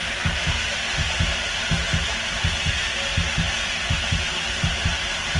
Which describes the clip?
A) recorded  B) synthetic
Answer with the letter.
A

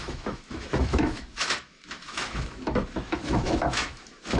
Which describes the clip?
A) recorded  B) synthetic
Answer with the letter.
B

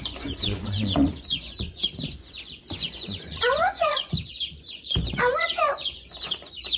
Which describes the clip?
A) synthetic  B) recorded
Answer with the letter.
A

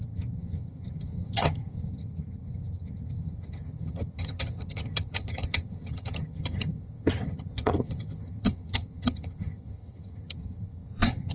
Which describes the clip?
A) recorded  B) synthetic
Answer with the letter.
B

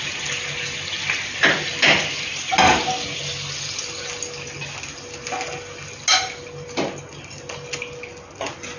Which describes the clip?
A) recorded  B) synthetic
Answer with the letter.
A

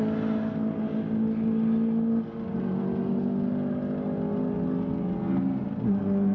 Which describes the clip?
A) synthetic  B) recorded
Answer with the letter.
B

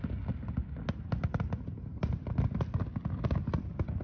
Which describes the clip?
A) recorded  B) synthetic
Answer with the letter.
A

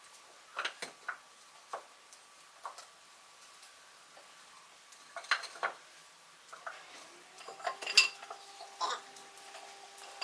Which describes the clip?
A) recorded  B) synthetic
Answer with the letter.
A